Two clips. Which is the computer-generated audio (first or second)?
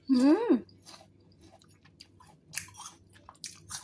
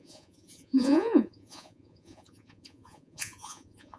second